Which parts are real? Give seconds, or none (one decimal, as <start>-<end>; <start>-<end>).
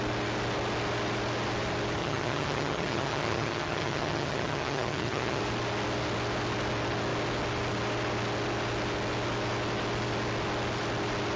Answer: 0.0-2.0; 5.4-11.4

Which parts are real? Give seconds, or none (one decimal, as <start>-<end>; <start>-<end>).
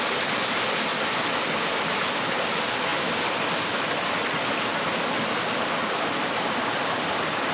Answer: 0.0-7.5